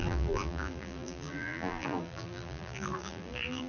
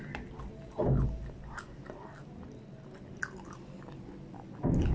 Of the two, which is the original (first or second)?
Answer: second